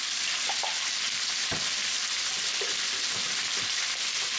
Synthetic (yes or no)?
no